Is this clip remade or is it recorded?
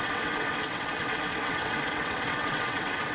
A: remade